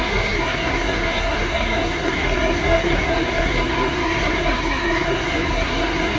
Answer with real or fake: fake